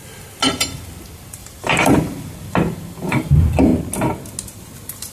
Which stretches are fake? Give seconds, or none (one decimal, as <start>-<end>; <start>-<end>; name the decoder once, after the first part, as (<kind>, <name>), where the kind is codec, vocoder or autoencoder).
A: 1.4-3.3 (vocoder, BigVGAN v2)